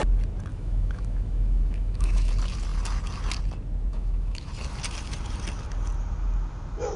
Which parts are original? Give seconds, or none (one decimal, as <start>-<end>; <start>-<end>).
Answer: 0.0-0.5; 2.3-3.9; 4.5-7.0